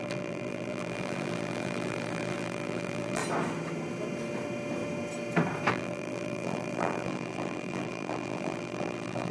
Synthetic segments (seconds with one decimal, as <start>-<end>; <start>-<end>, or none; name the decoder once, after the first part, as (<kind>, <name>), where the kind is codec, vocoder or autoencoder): 0.0-3.2 (vocoder, BigVGAN v2); 5.7-9.3